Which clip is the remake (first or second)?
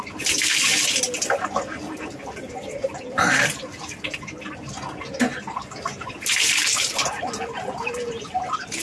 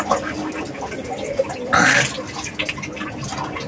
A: first